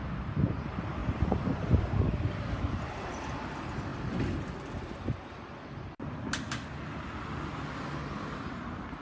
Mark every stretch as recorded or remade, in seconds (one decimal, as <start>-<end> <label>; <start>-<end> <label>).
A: 0.0-9.0 recorded